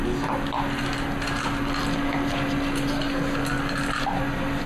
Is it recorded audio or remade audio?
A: recorded